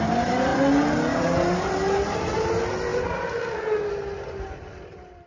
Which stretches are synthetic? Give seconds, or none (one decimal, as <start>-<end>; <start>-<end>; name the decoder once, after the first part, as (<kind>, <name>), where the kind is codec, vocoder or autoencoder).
none